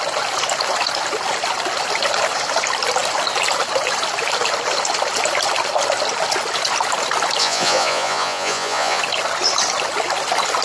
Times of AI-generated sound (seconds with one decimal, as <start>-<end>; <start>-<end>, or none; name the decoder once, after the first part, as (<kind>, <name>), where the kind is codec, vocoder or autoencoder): 7.4-9.0 (vocoder, Vocos)